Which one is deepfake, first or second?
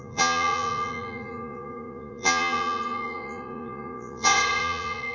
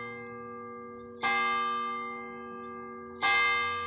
first